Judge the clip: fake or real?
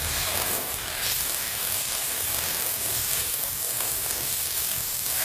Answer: fake